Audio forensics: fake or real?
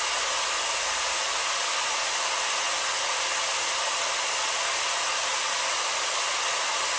real